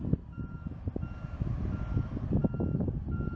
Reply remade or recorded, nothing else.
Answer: recorded